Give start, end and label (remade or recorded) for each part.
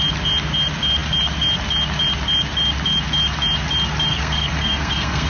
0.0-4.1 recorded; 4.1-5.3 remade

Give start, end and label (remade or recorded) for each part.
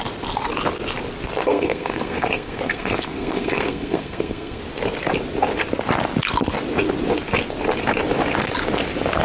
0.0-1.4 recorded; 1.4-4.6 remade; 4.6-9.2 recorded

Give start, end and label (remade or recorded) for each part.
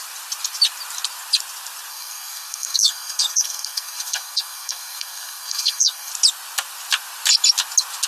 0.0-1.9 recorded; 1.9-6.1 remade; 6.1-8.1 recorded